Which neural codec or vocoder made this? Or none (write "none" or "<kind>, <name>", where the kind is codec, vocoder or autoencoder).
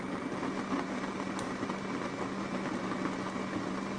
none